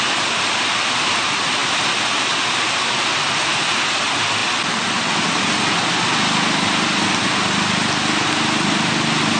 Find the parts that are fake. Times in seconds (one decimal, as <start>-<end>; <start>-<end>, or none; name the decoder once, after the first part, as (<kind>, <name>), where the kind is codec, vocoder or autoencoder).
none